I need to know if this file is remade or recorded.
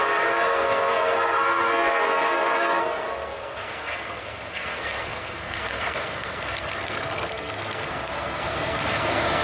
remade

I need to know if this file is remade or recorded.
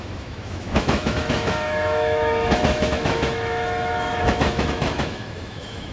remade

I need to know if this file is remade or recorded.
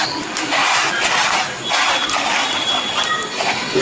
recorded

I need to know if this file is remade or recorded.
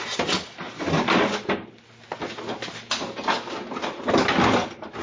recorded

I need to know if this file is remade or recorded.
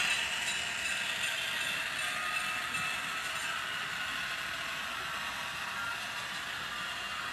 recorded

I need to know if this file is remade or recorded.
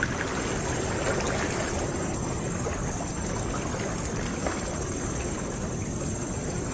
recorded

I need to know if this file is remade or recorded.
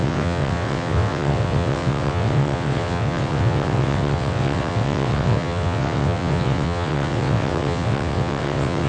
remade